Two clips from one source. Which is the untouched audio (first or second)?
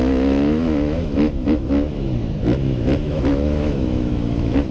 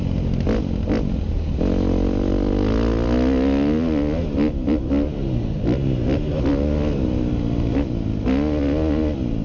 second